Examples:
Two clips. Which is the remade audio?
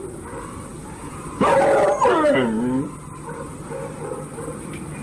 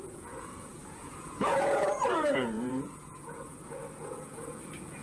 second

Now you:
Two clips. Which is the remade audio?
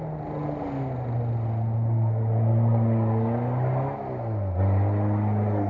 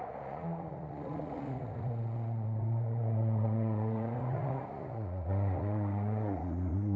second